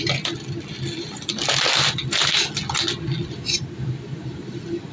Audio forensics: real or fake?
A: real